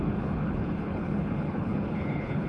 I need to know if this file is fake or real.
fake